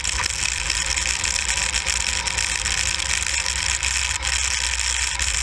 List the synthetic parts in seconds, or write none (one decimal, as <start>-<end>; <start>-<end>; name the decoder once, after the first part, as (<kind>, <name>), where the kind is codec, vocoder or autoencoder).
none